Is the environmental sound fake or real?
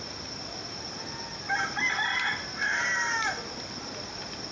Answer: real